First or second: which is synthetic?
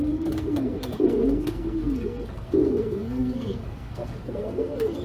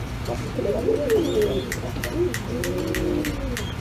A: first